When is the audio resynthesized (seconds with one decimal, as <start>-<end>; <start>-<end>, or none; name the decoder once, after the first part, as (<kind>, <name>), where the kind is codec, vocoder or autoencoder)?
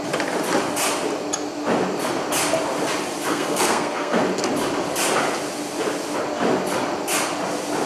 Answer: 3.3-4.2 (codec, SNAC)